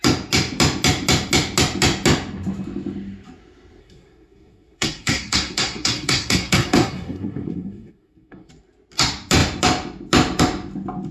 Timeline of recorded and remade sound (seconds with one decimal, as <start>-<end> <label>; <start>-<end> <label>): 0.0-3.8 recorded; 3.8-8.5 remade; 8.5-11.1 recorded